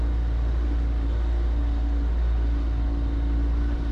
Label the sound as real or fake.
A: real